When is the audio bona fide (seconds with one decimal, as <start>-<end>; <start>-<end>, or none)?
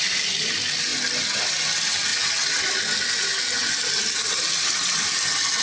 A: 0.0-5.6